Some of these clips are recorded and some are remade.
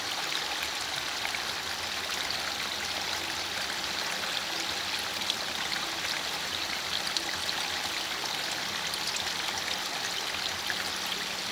recorded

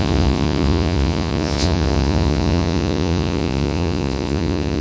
remade